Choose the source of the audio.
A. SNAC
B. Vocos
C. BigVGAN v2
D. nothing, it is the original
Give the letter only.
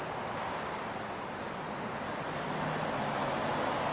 D